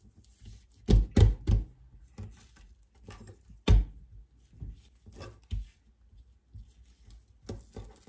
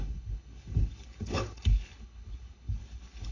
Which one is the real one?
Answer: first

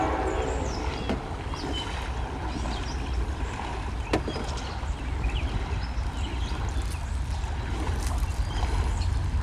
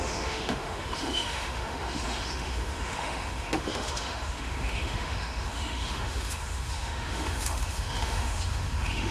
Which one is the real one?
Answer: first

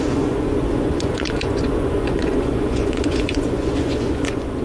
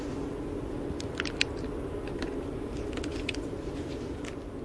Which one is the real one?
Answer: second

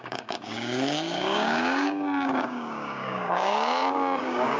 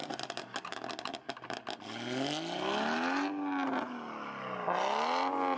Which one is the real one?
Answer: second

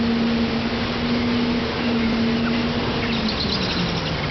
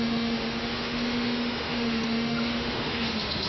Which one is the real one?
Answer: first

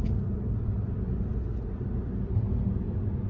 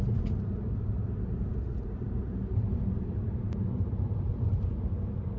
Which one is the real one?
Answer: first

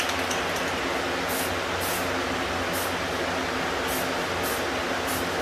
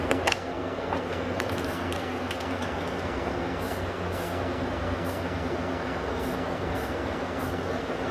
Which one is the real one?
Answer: first